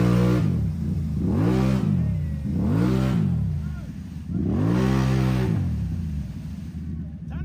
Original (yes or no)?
yes